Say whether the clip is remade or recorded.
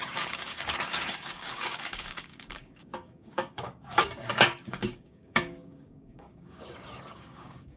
remade